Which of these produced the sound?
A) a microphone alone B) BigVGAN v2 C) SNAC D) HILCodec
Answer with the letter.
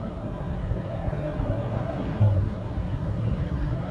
C